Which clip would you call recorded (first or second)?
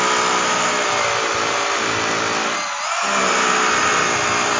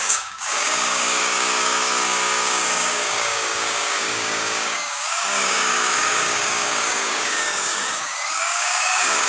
first